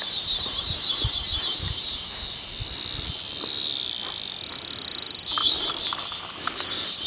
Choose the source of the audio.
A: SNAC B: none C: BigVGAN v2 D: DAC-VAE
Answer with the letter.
C